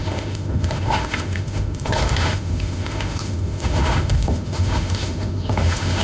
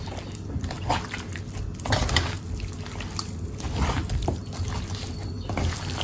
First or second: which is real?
second